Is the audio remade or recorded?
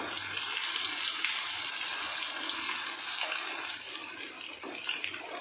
recorded